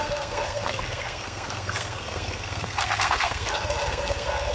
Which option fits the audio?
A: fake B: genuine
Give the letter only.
A